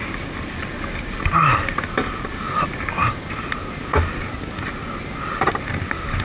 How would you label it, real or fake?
real